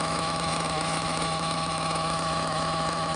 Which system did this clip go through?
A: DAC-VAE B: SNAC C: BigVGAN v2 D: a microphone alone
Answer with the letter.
A